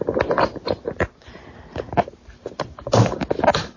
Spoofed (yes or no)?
no